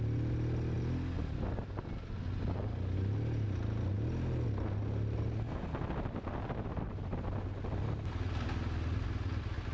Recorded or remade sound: recorded